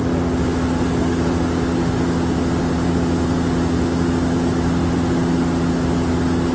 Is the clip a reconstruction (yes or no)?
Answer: no